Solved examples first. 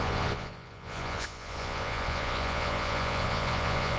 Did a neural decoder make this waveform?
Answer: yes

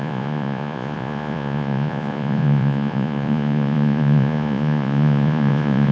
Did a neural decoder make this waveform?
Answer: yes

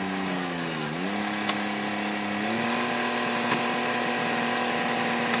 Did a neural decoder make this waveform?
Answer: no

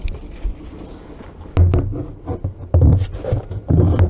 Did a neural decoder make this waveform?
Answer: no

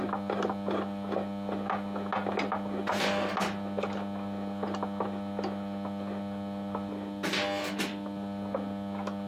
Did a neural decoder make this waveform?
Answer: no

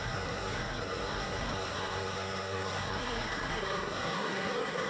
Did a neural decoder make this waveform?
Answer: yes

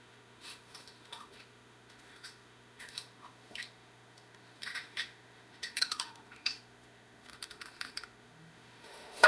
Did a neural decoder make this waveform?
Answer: yes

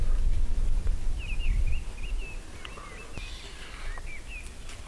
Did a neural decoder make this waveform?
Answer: no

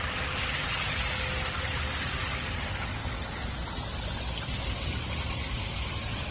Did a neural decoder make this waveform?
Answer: no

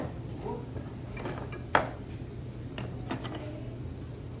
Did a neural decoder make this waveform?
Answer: no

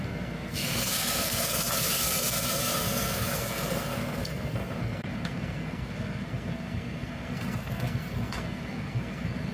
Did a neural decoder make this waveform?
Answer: yes